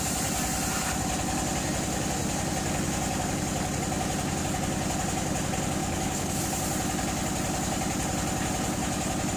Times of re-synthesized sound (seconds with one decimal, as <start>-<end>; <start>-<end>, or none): 5.8-6.4